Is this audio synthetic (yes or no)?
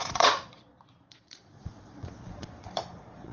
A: yes